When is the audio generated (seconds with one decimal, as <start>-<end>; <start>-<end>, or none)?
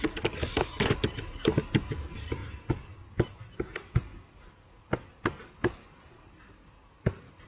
0.0-2.4; 3.3-4.1; 5.4-7.5